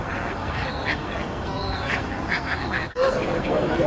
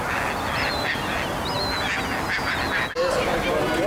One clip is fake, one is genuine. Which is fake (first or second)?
first